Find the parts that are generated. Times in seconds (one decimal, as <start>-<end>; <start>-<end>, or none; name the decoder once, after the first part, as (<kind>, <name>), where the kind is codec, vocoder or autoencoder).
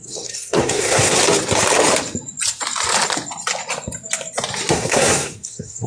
0.0-1.2 (codec, SNAC); 4.7-5.9